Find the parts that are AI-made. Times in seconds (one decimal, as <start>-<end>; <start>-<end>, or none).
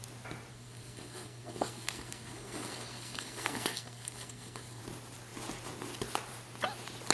0.5-4.8